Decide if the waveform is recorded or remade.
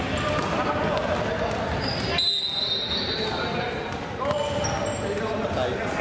recorded